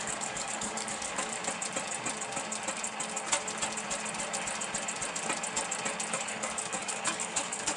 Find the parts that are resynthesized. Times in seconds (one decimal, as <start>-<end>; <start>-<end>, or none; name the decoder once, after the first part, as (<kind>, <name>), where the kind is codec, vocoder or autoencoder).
0.0-1.4 (codec, DAC); 6.1-7.8